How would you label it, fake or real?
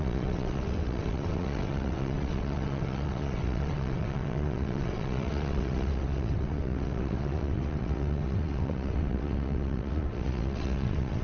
fake